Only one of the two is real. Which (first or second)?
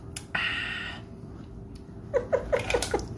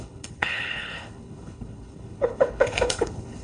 first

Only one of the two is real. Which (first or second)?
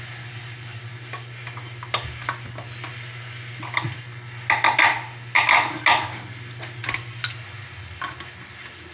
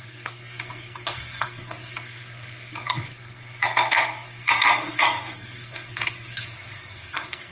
first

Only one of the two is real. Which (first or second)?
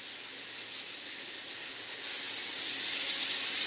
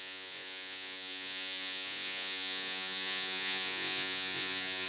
first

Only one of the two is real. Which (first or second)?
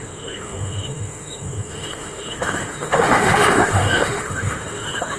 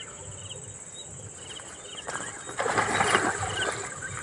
second